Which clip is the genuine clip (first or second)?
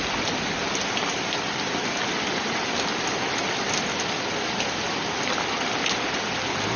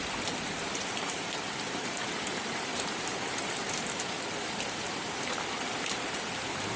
first